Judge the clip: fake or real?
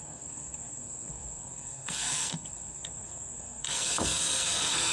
fake